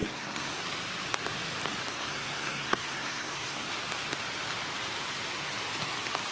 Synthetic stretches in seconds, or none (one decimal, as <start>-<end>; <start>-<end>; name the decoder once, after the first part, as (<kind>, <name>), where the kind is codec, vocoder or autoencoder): 0.0-0.6 (codec, SNAC); 1.9-3.7